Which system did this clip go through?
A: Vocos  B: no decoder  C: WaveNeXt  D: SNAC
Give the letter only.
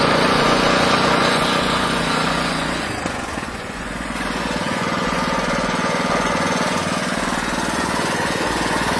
A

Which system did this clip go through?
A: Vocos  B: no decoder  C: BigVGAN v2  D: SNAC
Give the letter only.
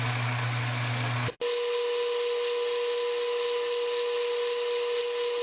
B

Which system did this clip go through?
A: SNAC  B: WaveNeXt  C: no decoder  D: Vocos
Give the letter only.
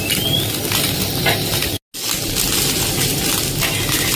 C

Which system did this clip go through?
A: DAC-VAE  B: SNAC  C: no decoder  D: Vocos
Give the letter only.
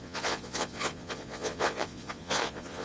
D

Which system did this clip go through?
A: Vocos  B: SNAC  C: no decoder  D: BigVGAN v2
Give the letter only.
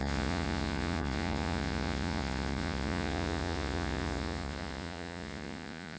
A